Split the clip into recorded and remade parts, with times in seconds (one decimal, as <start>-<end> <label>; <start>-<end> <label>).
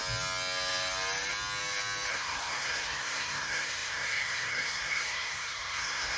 0.0-2.1 recorded; 2.1-6.2 remade